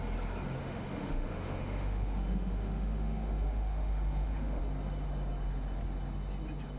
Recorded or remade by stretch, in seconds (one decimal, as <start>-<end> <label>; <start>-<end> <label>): 0.0-0.6 recorded; 0.6-4.6 remade; 4.6-6.8 recorded